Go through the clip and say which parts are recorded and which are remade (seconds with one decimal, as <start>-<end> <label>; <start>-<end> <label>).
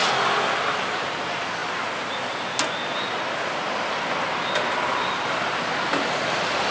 0.0-6.7 recorded